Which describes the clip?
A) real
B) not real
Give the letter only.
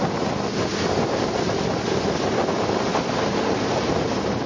A